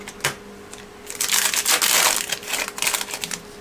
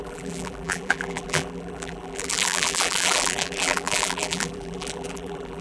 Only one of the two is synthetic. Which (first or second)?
second